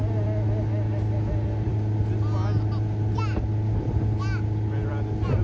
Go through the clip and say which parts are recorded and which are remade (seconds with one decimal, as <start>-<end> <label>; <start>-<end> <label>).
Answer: 0.0-5.4 recorded

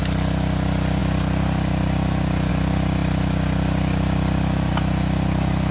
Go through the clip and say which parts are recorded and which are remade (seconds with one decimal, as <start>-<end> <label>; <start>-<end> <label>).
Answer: 0.0-5.7 recorded

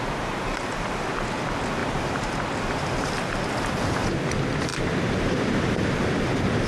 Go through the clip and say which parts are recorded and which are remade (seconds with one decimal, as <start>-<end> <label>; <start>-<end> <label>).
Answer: 0.0-1.8 recorded; 1.8-3.1 remade; 3.1-4.7 recorded; 4.7-6.0 remade; 6.0-6.7 recorded

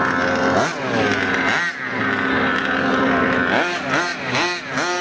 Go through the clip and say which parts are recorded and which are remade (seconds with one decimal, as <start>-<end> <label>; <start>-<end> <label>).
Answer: 0.0-5.0 recorded